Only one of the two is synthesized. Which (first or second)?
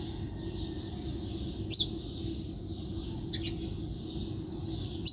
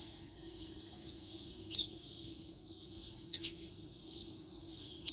second